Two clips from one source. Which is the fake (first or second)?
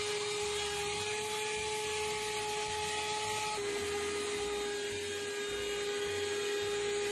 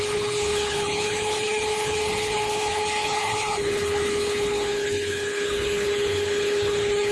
second